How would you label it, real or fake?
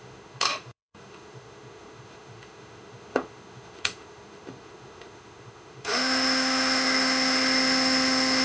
fake